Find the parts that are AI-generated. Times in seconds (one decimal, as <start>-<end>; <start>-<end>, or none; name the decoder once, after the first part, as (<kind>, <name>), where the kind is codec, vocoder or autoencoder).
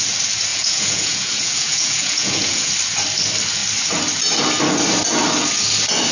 0.5-2.7 (vocoder, Vocos)